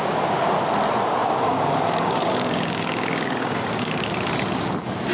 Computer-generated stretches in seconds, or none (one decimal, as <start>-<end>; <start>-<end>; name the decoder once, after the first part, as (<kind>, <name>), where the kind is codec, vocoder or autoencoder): 1.2-4.1 (codec, DAC)